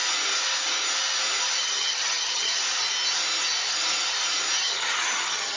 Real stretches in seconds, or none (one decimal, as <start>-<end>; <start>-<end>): 0.0-1.6; 2.6-4.6